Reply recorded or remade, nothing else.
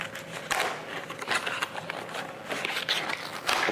recorded